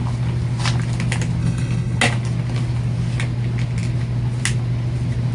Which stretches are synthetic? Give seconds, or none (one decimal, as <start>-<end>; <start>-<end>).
1.4-2.0